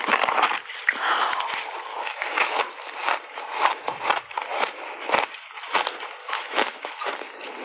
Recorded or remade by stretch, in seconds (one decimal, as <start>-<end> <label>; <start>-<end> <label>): 0.0-1.9 recorded; 1.9-2.6 remade; 2.6-6.2 recorded; 6.2-6.9 remade; 6.9-7.6 recorded